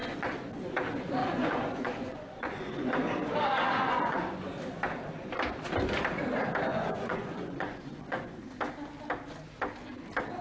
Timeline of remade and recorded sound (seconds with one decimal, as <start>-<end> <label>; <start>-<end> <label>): 0.0-0.5 remade; 0.5-1.2 recorded; 1.2-2.9 remade; 2.9-3.8 recorded; 3.8-4.5 remade; 4.5-6.7 recorded; 6.7-8.4 remade; 8.4-10.4 recorded